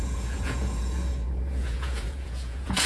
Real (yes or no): no